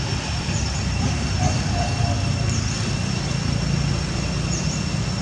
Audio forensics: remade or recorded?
recorded